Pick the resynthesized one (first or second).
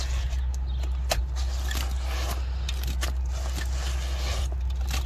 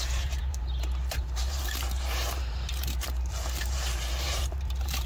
second